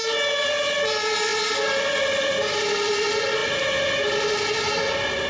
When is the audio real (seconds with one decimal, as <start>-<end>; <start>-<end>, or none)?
0.0-5.3